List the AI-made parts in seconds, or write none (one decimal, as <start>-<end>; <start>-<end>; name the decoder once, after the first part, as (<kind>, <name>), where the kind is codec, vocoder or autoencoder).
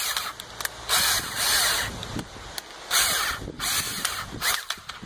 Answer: none